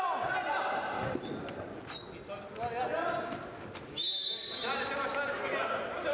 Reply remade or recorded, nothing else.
recorded